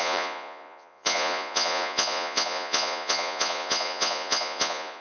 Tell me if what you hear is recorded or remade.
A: remade